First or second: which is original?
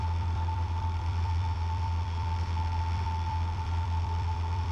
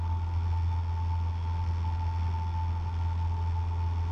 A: second